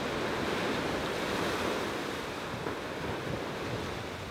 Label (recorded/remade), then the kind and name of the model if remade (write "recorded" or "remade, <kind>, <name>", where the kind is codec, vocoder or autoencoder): remade, vocoder, BigVGAN v2